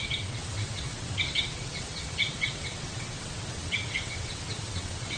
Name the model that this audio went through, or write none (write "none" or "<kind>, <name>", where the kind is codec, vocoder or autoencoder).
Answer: vocoder, WaveNeXt